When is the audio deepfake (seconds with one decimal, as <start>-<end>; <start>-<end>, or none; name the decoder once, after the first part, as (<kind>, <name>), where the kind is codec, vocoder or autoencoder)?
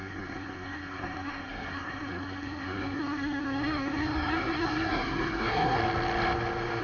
0.0-5.8 (codec, SNAC)